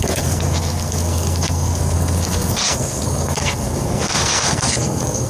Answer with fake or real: fake